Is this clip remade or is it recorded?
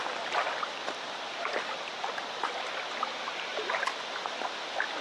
recorded